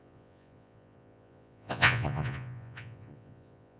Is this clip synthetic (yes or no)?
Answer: yes